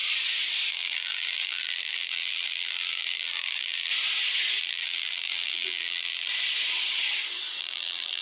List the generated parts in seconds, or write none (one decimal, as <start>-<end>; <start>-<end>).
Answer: 0.7-3.9; 4.6-6.3; 7.6-8.2